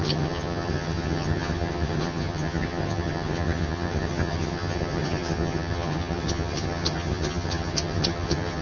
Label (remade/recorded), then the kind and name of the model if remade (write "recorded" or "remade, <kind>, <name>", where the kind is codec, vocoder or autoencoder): remade, vocoder, HiFi-GAN